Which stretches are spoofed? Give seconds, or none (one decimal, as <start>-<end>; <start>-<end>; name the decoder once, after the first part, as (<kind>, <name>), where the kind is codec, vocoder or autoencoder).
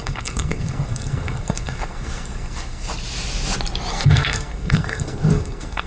0.0-2.9 (codec, SNAC); 3.9-5.9